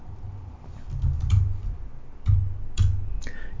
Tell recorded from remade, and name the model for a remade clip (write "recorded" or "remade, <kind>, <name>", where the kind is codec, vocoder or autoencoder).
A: recorded